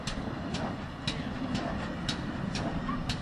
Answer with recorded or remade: recorded